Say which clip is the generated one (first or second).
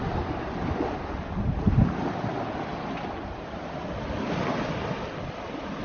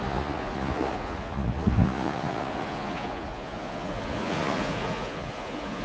second